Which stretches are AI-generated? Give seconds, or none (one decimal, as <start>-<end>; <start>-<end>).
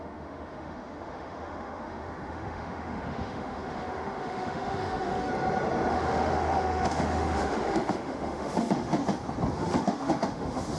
0.0-5.3; 5.9-9.0; 9.5-10.8